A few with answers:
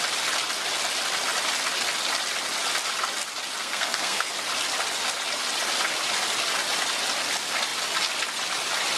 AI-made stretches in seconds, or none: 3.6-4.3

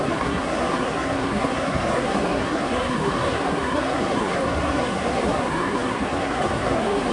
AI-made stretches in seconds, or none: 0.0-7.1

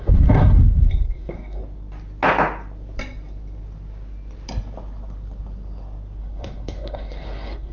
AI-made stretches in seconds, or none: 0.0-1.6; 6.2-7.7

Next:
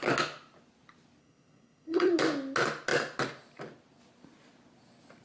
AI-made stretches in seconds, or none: 1.2-2.1

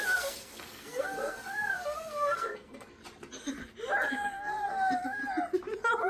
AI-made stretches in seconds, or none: 0.0-3.0; 4.1-5.2

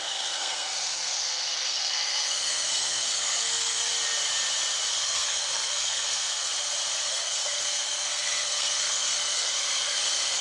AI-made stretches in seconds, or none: 0.0-3.9; 4.9-6.5; 7.1-10.4

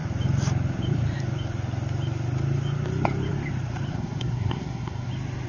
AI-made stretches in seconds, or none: 3.9-5.1